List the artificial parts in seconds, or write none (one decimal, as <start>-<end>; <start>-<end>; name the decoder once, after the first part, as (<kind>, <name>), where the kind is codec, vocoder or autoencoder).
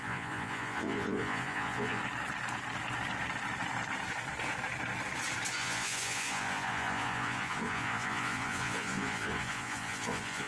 0.0-2.0 (vocoder, Vocos); 5.5-10.5